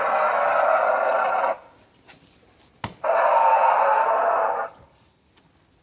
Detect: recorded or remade recorded